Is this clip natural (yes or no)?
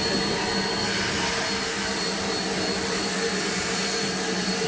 yes